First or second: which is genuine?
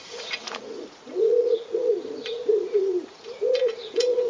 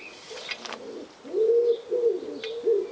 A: second